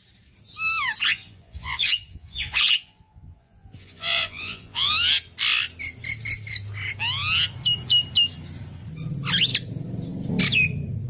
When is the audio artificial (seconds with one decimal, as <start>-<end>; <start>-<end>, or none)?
1.1-4.9